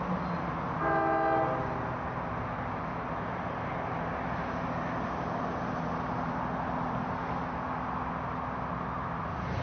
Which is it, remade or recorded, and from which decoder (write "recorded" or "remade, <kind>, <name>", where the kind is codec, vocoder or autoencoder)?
recorded